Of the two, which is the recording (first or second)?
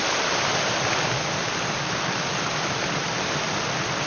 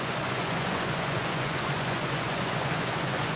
first